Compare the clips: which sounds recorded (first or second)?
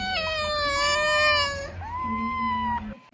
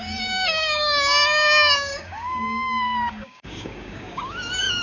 first